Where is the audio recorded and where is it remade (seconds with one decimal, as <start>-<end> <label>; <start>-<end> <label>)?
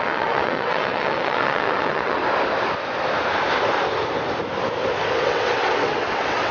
0.0-2.2 remade; 2.2-5.2 recorded; 5.2-6.5 remade